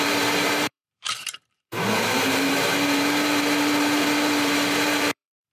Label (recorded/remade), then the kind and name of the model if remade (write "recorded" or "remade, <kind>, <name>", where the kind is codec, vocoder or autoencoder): remade, vocoder, BigVGAN v2